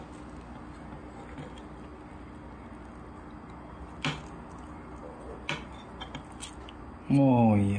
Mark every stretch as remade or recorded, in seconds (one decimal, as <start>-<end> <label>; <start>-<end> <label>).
0.0-7.8 recorded